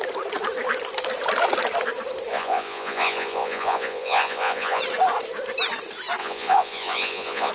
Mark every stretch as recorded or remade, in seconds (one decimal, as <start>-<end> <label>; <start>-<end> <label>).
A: 0.0-2.3 recorded; 2.3-4.8 remade; 4.8-6.2 recorded; 6.2-7.5 remade